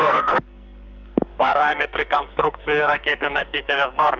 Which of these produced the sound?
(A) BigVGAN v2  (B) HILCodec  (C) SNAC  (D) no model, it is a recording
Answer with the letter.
C